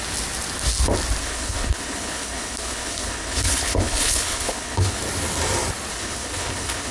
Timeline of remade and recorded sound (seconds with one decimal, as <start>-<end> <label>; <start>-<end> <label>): 0.0-1.2 recorded; 1.2-5.0 remade; 5.0-5.9 recorded; 5.9-6.9 remade